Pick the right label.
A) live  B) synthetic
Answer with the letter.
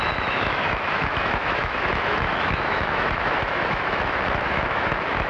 B